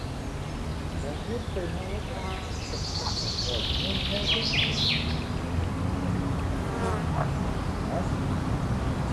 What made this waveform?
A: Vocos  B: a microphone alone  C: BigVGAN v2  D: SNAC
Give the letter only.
B